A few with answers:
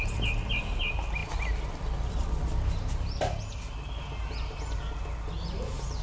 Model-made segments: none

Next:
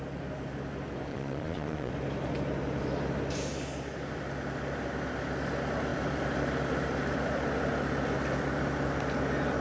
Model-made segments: 1.1-1.9